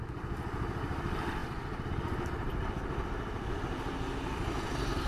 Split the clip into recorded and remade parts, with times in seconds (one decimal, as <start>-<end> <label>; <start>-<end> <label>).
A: 0.0-1.4 recorded; 1.4-1.9 remade; 1.9-5.1 recorded